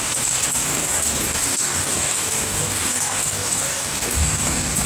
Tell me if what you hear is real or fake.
fake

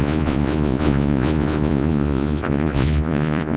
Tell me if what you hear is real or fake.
fake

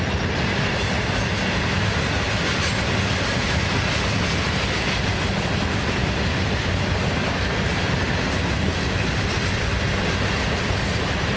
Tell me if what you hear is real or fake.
real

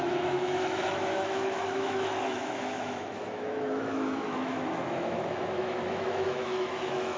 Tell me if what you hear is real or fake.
fake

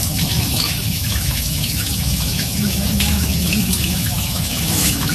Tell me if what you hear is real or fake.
fake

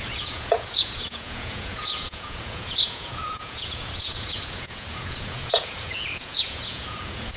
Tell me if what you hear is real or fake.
fake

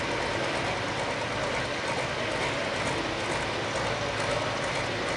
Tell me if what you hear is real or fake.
real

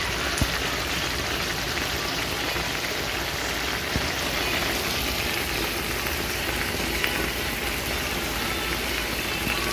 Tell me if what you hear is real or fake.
real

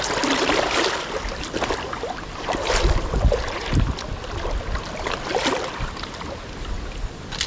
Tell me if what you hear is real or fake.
real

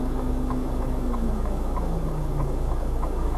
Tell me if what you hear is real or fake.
fake